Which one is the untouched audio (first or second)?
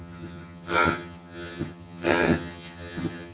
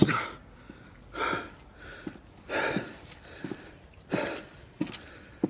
second